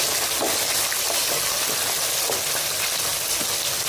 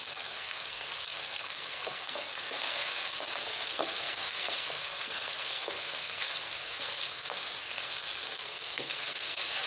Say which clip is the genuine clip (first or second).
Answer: first